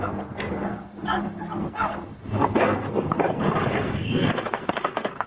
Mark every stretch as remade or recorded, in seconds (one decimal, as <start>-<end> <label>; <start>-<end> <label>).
0.0-5.3 remade